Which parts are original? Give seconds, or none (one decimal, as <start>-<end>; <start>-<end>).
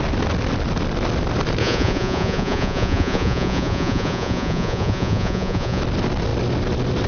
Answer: 0.0-1.6; 5.8-7.1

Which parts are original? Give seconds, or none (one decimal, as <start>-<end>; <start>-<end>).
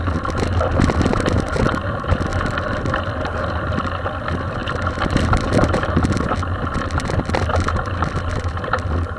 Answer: 0.0-1.1; 1.6-2.3; 3.1-4.6; 5.9-9.2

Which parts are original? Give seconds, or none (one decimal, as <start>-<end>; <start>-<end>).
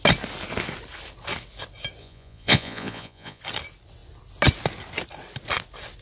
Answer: 0.0-2.0; 3.4-6.0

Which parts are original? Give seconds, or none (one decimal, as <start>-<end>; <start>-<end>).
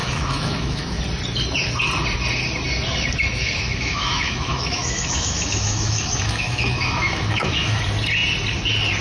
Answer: 1.0-3.3; 7.8-9.0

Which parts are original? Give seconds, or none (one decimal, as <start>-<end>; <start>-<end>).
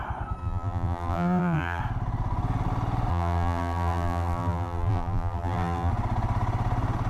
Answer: 0.0-0.4; 1.8-3.1; 5.9-7.1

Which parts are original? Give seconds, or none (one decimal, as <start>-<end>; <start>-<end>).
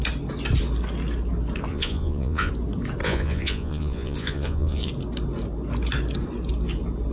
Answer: 0.0-1.7; 2.5-3.0; 4.9-7.1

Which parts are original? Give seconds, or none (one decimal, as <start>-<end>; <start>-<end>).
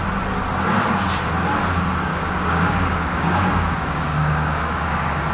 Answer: 0.0-2.1